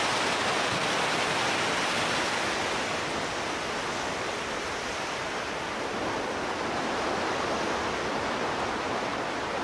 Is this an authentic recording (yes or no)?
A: yes